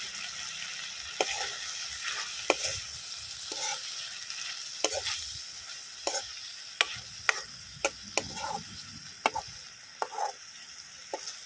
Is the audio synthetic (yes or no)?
no